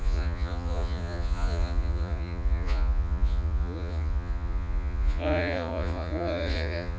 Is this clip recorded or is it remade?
remade